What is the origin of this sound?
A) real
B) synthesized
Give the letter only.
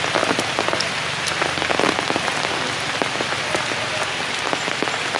A